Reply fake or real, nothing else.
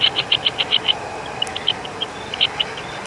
real